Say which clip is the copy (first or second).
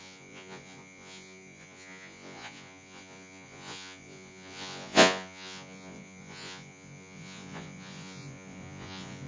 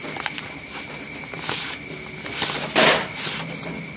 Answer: first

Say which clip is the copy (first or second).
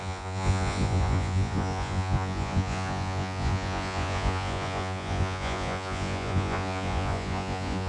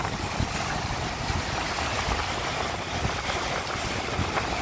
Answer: first